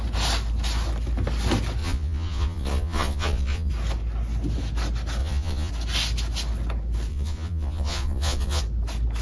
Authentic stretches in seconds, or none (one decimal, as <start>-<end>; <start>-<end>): 0.0-1.8; 3.7-5.2; 5.7-7.1; 8.6-9.2